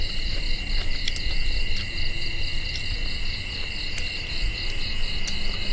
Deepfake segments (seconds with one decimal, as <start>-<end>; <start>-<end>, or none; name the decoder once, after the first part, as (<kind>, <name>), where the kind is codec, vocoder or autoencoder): none